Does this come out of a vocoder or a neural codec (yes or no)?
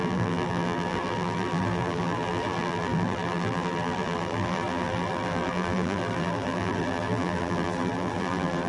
yes